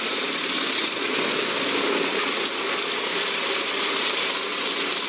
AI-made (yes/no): no